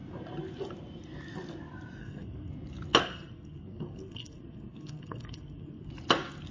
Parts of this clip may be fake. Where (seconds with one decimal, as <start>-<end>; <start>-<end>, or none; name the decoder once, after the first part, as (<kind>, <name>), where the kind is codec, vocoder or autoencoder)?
2.0-2.5 (codec, SNAC); 3.0-5.9